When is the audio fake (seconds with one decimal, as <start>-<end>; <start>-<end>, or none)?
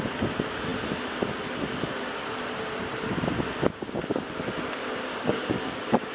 5.1-6.1